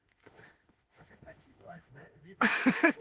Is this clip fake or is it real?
fake